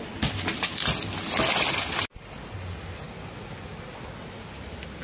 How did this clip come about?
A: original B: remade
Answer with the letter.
A